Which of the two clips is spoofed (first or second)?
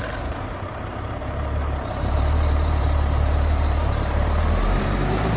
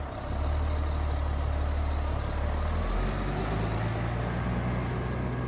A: first